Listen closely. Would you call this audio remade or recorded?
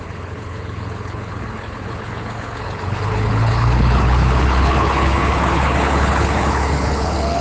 remade